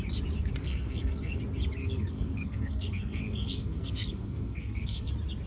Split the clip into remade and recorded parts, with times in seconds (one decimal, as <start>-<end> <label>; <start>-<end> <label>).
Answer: 0.0-0.6 recorded; 0.6-1.4 remade; 1.4-1.8 recorded; 1.8-5.1 remade; 5.1-5.5 recorded